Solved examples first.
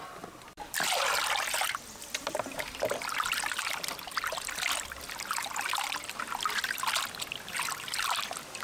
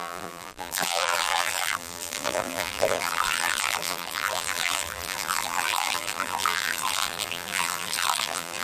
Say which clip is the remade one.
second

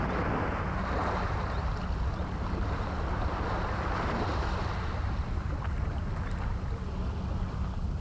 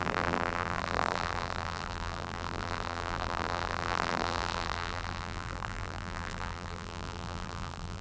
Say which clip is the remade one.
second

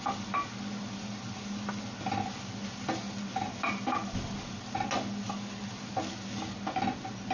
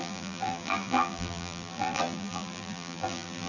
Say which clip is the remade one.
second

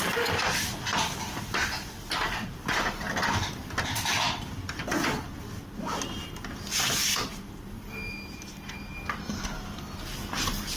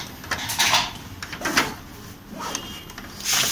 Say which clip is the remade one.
first